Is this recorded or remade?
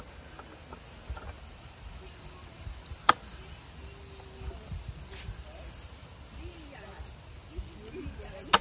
recorded